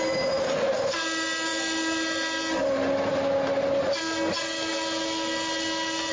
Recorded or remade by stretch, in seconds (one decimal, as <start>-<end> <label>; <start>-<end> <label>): 0.0-6.1 recorded